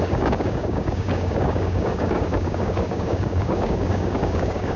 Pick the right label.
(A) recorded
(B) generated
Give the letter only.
B